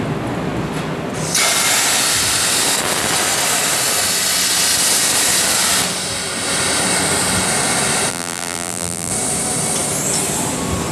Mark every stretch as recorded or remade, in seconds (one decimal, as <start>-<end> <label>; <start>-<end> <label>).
0.0-8.1 recorded; 8.1-9.1 remade; 9.1-10.9 recorded